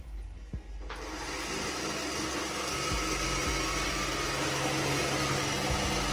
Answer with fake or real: real